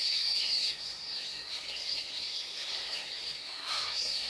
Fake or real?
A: fake